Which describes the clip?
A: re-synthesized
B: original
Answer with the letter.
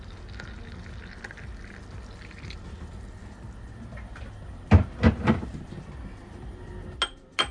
B